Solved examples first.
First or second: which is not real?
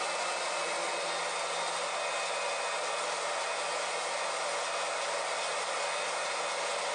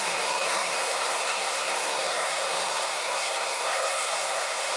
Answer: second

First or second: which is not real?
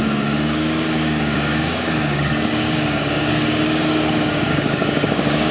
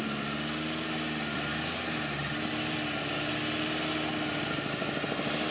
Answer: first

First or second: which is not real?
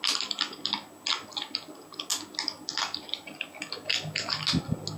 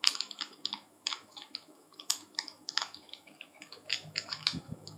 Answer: second